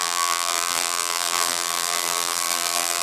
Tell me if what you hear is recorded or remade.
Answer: remade